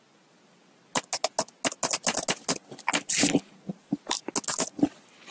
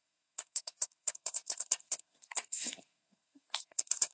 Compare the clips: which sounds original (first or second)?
first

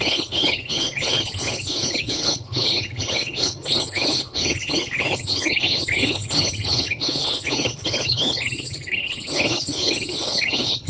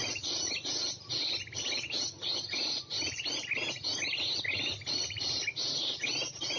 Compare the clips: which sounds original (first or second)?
second